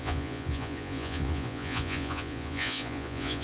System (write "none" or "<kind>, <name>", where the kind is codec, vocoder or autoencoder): vocoder, Vocos